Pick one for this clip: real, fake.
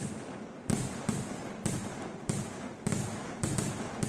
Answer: real